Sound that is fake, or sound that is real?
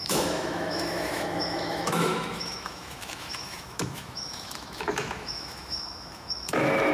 fake